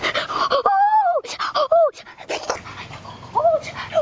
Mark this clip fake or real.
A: real